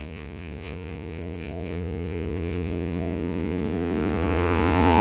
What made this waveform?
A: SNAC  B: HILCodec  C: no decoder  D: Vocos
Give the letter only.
D